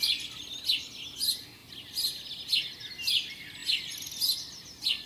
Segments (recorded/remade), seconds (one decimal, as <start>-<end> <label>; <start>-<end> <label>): 0.0-5.1 recorded